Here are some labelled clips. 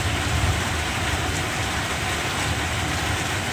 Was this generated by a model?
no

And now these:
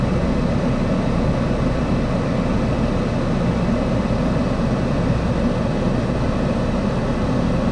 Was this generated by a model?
no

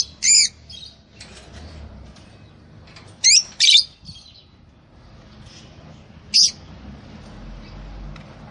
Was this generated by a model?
no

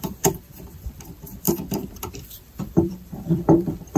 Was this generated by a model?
yes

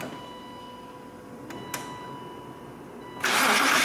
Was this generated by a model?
no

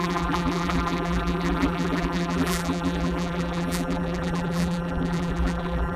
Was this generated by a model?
yes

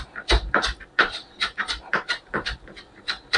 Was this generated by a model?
yes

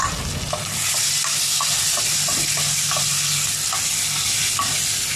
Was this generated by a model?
no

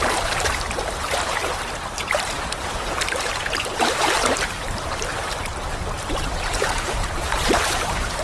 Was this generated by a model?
yes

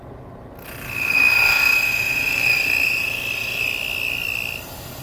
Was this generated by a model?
no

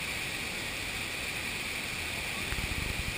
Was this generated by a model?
no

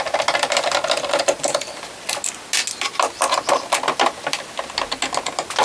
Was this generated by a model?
no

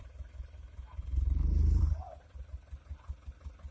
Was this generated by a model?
yes